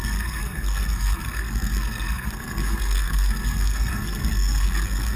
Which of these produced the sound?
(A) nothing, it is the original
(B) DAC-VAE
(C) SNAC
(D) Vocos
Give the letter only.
C